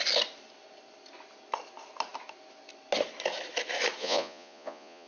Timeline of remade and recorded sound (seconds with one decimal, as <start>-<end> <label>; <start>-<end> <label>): 0.0-4.0 recorded; 4.0-5.1 remade